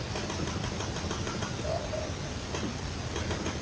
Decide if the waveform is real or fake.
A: real